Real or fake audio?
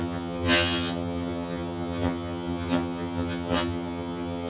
fake